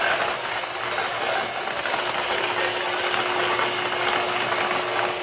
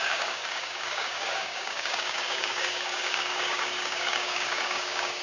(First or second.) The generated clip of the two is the second